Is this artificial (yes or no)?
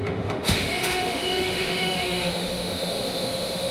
yes